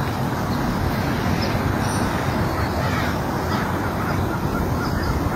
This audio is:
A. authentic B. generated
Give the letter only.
A